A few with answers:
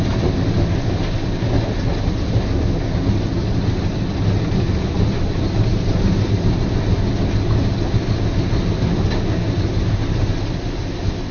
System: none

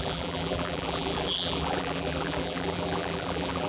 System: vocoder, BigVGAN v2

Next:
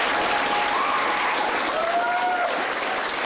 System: none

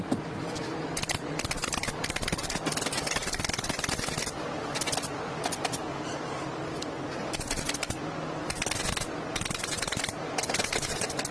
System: none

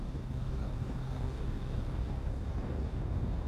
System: codec, DAC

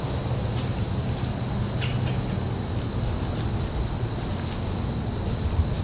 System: none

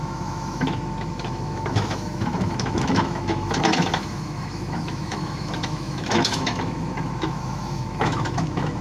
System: autoencoder, DAC-VAE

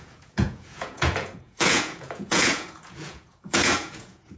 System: vocoder, Vocos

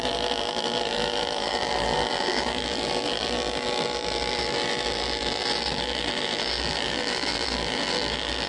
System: vocoder, BigVGAN v2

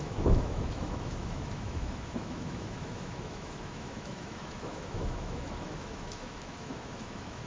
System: autoencoder, DAC-VAE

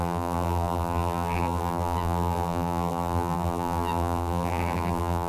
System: vocoder, BigVGAN v2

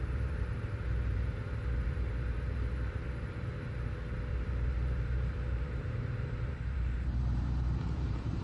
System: vocoder, BigVGAN v2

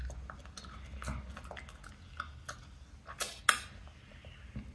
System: none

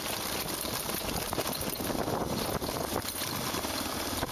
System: none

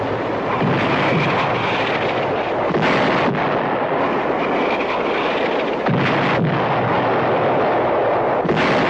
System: none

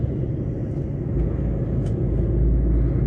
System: none